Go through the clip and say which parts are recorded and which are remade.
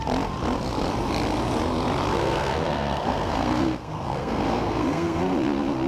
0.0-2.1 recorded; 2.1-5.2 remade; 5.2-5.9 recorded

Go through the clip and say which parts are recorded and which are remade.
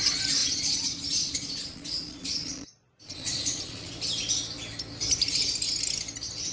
0.0-0.4 recorded; 0.4-3.9 remade; 3.9-6.5 recorded